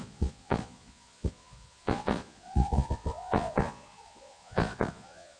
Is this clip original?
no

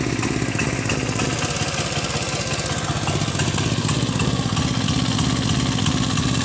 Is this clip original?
yes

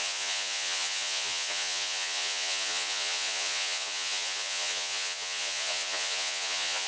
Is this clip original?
no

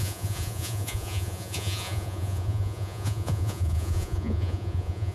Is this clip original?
no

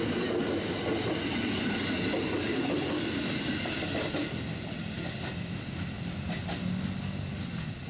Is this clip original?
yes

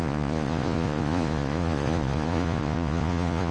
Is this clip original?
no